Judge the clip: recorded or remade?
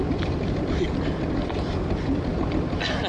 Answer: remade